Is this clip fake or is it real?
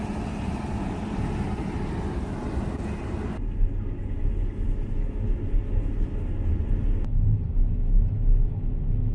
real